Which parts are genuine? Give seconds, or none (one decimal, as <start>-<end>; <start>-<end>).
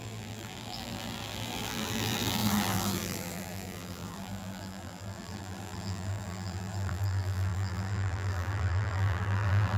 none